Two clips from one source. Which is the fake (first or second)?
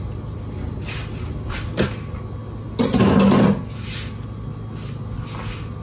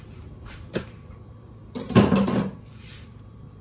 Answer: second